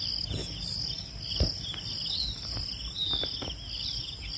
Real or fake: real